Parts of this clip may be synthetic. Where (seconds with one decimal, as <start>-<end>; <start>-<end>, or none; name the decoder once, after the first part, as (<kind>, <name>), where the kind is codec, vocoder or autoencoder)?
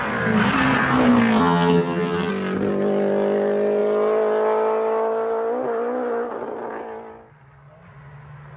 1.4-2.3 (vocoder, HiFi-GAN)